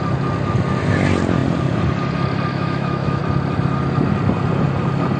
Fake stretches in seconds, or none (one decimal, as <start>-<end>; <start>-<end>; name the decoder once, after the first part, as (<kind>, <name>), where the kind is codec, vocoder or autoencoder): 2.5-3.2 (autoencoder, DAC-VAE)